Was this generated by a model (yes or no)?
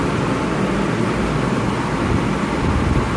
yes